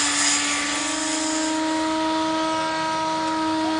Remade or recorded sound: recorded